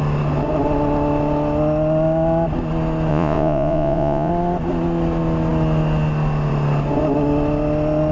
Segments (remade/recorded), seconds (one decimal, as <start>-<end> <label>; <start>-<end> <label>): 0.0-3.1 recorded; 3.1-4.3 remade; 4.3-8.1 recorded